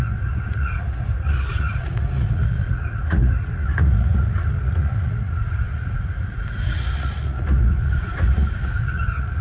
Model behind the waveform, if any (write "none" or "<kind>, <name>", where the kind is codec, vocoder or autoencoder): vocoder, Vocos